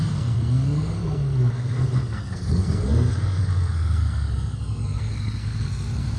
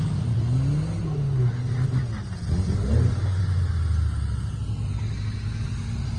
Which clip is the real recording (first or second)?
second